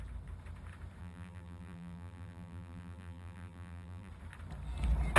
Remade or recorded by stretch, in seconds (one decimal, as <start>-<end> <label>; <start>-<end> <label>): 0.0-1.0 recorded; 1.0-4.1 remade; 4.1-5.2 recorded